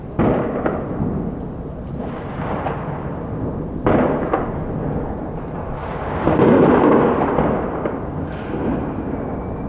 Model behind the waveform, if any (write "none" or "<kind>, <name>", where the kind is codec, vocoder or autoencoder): none